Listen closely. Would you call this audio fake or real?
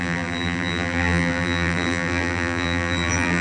fake